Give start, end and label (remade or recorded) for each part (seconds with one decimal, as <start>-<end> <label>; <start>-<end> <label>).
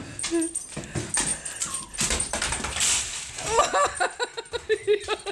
0.0-1.3 recorded; 1.3-3.3 remade; 3.3-5.3 recorded